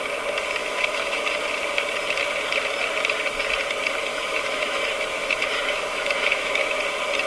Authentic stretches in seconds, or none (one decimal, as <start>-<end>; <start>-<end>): 0.0-0.6; 1.3-4.1; 4.8-5.2; 6.8-7.3

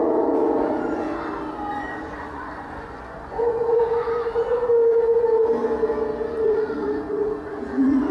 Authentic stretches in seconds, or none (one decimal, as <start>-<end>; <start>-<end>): 1.1-1.7; 4.7-6.3

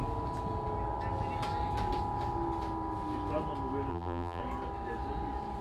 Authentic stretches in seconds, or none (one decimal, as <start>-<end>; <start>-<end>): 0.0-3.9; 4.4-5.6

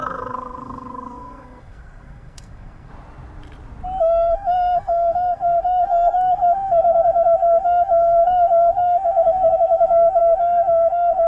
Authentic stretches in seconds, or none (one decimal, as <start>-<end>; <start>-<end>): 2.9-4.0

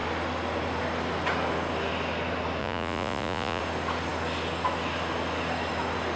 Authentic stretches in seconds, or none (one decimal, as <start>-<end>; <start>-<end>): 0.0-2.6; 3.6-6.2

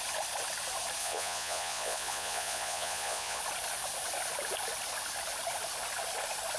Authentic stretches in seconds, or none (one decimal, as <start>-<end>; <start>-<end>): 0.0-1.0; 3.4-6.6

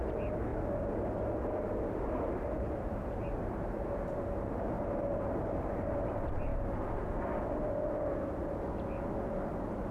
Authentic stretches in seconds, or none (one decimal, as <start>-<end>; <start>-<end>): 6.5-9.9

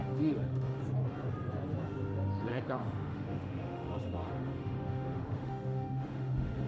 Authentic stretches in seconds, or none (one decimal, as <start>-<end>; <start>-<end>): 0.8-2.5